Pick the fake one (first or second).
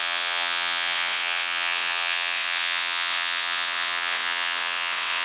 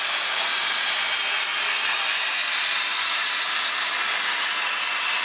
first